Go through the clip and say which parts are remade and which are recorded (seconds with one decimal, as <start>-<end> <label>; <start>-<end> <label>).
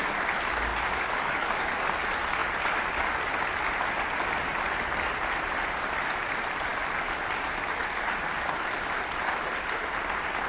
0.0-0.7 recorded; 0.7-1.9 remade; 1.9-10.5 recorded